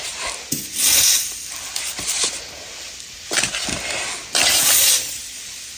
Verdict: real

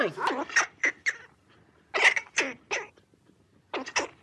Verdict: real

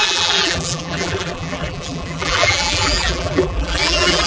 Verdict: fake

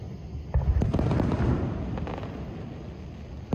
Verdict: real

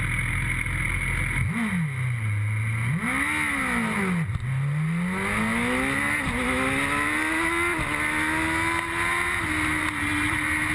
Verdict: real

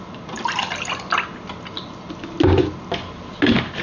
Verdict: real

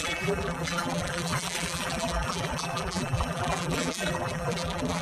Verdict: fake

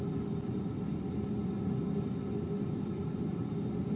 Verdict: real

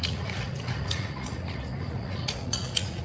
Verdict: fake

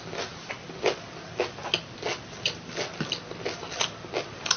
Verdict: real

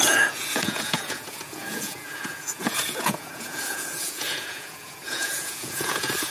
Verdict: fake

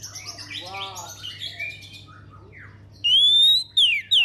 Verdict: real